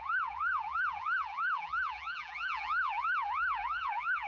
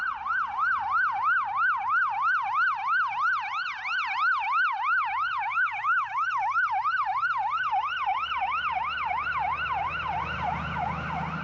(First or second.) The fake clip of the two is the first